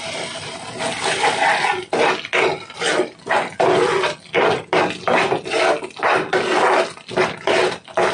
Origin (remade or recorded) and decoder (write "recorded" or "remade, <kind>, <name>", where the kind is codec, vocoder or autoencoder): recorded